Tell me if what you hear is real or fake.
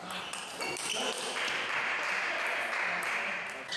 real